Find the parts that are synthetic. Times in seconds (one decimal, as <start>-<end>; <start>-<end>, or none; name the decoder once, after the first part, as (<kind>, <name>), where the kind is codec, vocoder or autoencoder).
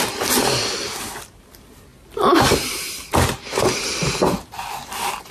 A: none